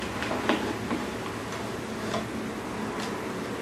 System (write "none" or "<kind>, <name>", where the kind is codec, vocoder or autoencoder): none